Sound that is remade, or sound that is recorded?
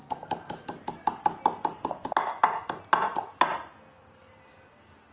recorded